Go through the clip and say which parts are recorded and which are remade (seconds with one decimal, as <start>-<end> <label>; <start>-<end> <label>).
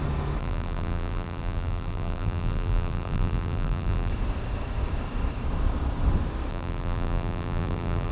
0.0-0.4 recorded; 0.4-4.1 remade; 4.1-6.5 recorded; 6.5-8.1 remade